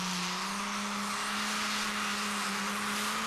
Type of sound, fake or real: real